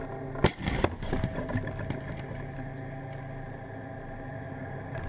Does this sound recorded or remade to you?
recorded